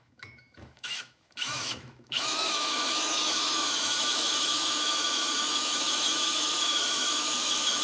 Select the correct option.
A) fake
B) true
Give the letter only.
A